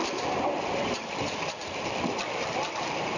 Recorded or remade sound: remade